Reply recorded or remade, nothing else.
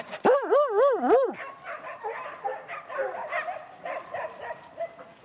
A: recorded